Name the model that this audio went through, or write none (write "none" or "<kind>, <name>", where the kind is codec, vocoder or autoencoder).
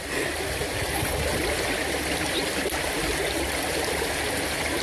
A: none